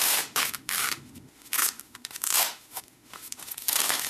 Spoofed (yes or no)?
yes